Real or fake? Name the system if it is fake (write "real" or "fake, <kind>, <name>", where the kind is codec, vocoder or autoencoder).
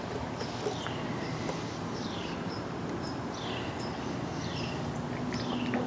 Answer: real